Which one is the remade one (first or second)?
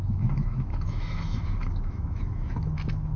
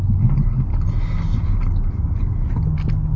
first